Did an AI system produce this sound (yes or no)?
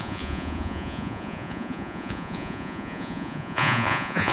yes